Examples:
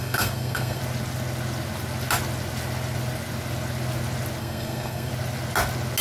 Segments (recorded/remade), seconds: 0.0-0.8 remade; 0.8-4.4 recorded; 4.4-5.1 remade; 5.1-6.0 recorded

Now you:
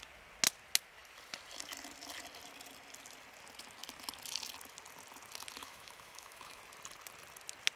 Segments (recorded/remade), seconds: 0.0-5.6 recorded; 5.6-6.6 remade; 6.6-7.8 recorded

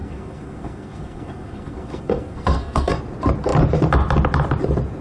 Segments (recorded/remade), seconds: 0.0-3.0 remade; 3.0-5.0 recorded

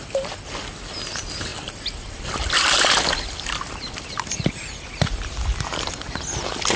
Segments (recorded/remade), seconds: 0.0-6.8 recorded

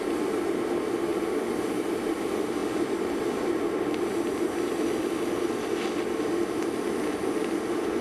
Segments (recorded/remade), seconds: 0.0-8.0 recorded